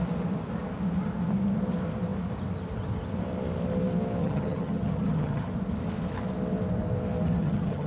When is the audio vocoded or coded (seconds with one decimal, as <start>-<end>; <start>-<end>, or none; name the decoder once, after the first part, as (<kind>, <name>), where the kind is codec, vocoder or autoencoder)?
4.2-5.5 (vocoder, HiFi-GAN); 7.4-7.9